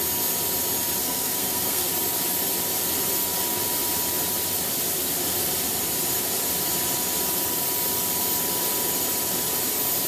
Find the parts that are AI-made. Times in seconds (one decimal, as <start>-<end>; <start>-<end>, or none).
1.0-1.9